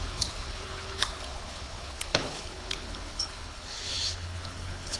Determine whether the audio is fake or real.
fake